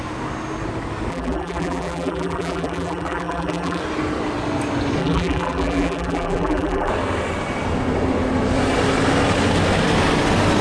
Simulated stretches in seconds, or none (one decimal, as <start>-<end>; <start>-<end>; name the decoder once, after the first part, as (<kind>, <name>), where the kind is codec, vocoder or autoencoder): 1.1-3.8 (vocoder, BigVGAN v2); 5.0-6.9

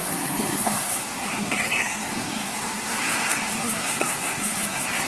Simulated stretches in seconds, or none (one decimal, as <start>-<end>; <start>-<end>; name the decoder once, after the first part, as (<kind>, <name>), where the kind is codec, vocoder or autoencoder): 0.0-5.1 (codec, SNAC)

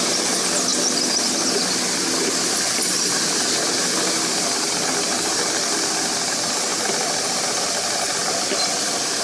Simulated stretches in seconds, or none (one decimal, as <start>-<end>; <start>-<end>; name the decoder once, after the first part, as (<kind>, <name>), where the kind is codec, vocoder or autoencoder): none

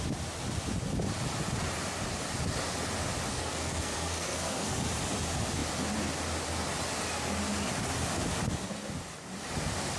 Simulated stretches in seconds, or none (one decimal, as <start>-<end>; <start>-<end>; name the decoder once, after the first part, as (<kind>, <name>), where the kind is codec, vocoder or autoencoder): 3.3-4.8 (codec, SNAC)

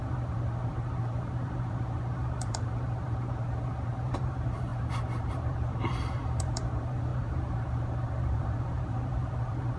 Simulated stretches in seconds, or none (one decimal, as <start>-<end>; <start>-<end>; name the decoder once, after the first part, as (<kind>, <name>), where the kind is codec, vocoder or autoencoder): 0.0-4.7 (vocoder, BigVGAN v2); 5.3-9.8

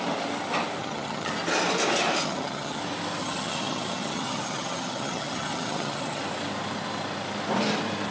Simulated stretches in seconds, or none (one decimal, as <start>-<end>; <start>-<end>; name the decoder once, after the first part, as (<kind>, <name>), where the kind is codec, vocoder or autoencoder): 0.8-1.3 (vocoder, HiFi-GAN); 2.2-2.8; 3.2-6.2

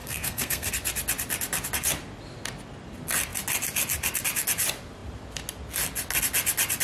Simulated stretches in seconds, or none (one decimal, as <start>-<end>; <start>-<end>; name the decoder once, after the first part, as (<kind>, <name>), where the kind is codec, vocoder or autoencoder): 0.0-0.7 (codec, SNAC)